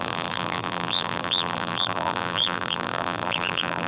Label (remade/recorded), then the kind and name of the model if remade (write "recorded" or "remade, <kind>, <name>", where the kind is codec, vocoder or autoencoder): remade, vocoder, BigVGAN v2